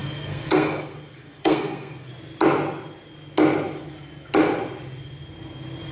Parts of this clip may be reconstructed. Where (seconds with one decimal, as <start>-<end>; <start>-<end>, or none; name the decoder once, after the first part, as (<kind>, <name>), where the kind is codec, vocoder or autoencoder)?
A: 0.0-2.1 (codec, SNAC)